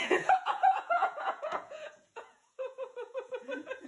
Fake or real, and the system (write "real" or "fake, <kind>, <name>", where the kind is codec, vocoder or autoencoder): fake, vocoder, Vocos